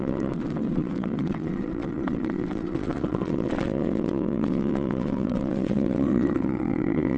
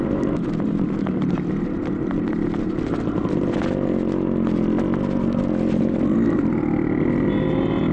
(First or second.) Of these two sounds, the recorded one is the second